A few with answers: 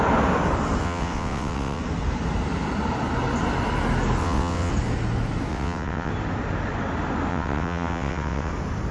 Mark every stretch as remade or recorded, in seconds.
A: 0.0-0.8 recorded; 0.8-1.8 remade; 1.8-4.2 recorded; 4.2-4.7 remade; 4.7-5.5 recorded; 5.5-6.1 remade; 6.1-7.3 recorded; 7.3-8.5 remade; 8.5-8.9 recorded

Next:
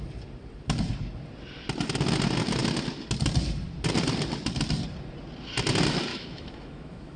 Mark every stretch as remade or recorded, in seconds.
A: 0.0-6.1 recorded; 6.1-7.2 remade

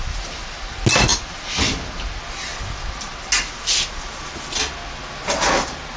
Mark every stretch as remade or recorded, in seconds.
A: 0.0-6.0 recorded

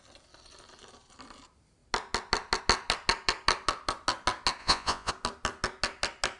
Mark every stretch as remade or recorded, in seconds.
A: 0.0-4.6 recorded; 4.6-5.1 remade; 5.1-6.4 recorded

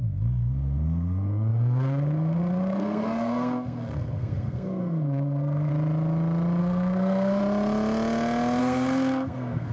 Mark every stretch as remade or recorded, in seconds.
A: 0.0-5.7 remade; 5.7-6.6 recorded; 6.6-7.4 remade; 7.4-8.6 recorded; 8.6-9.7 remade